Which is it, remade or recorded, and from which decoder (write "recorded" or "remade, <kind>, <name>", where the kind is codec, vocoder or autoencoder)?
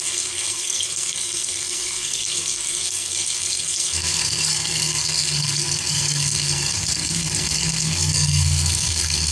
remade, codec, SNAC